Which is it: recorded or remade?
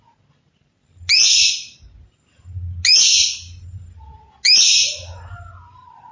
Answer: recorded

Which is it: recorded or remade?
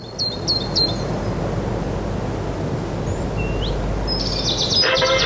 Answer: recorded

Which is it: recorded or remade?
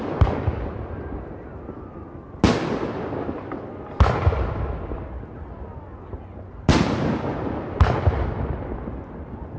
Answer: recorded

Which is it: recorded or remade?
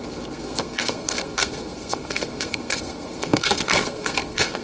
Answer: remade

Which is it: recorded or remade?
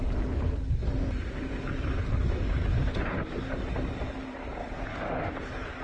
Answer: recorded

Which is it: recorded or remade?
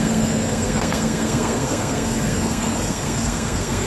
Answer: remade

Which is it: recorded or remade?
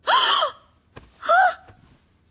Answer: recorded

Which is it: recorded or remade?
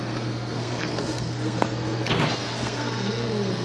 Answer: remade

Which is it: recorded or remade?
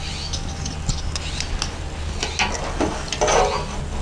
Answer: recorded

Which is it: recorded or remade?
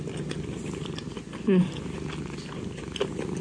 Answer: recorded